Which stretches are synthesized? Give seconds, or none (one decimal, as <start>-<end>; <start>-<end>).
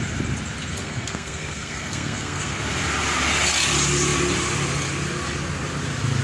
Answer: 0.7-2.6